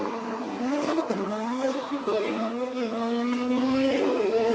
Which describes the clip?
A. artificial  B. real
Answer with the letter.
A